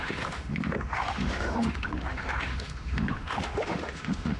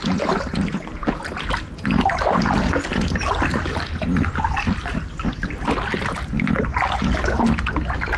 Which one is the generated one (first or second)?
first